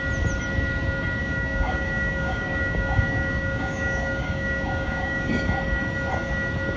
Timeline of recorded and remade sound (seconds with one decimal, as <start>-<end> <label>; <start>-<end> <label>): 0.0-1.2 recorded; 1.2-5.3 remade; 5.3-6.8 recorded